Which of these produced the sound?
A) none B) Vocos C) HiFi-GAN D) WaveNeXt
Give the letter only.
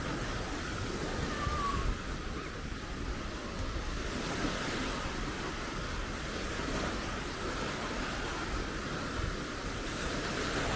A